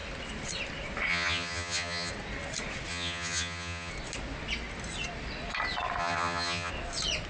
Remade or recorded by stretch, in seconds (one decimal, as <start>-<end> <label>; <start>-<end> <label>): 0.0-1.1 recorded; 1.1-2.1 remade; 2.1-2.9 recorded; 2.9-3.9 remade; 3.9-6.0 recorded; 6.0-6.7 remade; 6.7-7.3 recorded